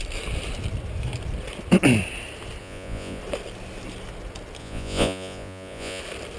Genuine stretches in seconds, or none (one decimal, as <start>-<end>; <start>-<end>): 0.0-2.6; 3.2-4.6; 6.0-6.4